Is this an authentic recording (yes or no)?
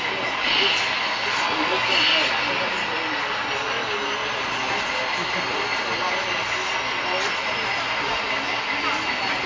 yes